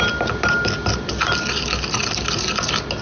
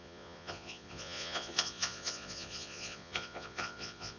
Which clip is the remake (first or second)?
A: second